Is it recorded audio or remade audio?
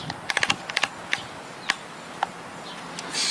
recorded